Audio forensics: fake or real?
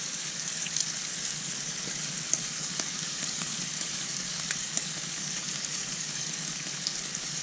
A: fake